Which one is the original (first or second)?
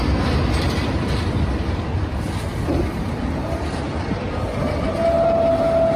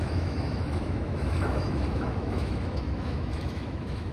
first